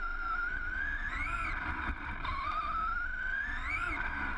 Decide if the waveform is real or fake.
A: real